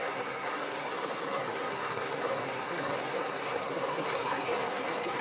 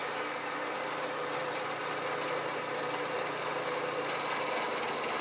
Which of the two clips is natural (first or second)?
second